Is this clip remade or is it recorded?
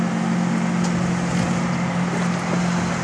recorded